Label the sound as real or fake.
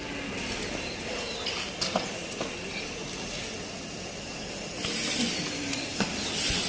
real